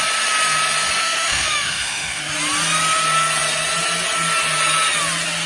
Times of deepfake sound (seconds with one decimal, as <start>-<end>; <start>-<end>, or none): 1.0-2.2